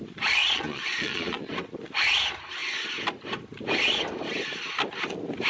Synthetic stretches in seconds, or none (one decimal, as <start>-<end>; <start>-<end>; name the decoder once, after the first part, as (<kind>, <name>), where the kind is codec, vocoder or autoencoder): 0.4-1.5 (vocoder, Vocos)